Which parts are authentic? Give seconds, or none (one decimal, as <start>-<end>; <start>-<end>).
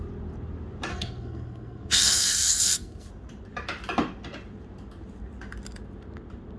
0.0-0.9; 3.1-6.6